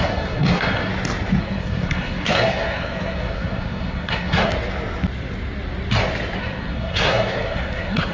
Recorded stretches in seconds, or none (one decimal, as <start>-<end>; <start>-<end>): 0.9-1.4; 4.5-6.4